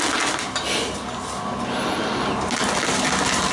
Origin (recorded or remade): recorded